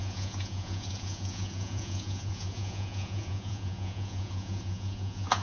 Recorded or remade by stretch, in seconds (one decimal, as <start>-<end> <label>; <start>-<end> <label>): 0.0-5.4 remade